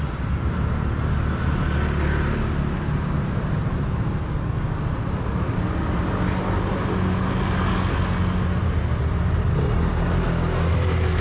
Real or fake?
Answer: real